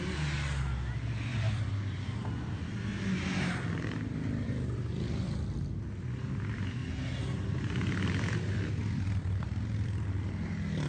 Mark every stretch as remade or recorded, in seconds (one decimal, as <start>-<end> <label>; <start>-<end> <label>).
0.0-1.3 recorded; 1.3-2.7 remade; 2.7-6.8 recorded; 6.8-8.1 remade; 8.1-8.8 recorded; 8.8-10.5 remade; 10.5-10.9 recorded